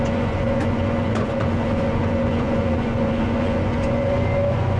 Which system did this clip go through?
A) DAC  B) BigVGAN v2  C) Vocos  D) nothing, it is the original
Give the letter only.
C